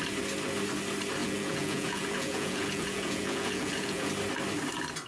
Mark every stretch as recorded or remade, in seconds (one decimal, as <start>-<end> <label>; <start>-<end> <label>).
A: 0.0-1.2 recorded; 1.2-4.1 remade; 4.1-5.1 recorded